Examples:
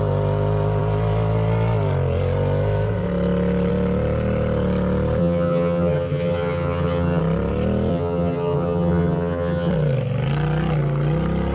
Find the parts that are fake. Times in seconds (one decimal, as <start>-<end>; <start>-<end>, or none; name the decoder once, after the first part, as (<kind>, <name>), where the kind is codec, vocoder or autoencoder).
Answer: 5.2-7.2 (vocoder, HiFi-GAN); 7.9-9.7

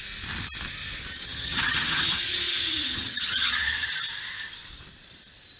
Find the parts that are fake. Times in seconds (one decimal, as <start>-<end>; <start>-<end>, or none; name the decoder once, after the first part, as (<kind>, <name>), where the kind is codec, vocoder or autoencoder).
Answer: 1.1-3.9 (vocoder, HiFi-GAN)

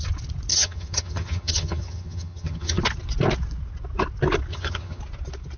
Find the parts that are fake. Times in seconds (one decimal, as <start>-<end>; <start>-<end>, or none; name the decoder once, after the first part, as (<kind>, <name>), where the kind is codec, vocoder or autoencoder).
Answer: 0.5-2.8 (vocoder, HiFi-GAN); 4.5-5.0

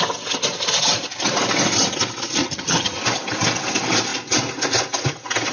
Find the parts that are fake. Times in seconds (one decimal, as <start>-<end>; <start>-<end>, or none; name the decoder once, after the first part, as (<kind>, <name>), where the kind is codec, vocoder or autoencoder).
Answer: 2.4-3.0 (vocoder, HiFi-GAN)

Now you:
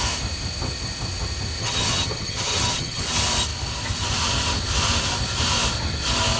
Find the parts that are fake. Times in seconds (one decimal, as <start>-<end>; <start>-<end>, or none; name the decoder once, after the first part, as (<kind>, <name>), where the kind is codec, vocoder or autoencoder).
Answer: 1.6-3.0 (vocoder, HiFi-GAN)